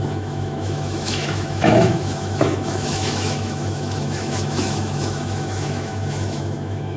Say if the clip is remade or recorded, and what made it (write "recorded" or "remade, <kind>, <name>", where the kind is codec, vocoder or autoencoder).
remade, autoencoder, DAC-VAE